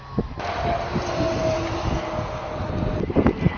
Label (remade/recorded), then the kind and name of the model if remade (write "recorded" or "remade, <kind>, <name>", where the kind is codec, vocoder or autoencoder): recorded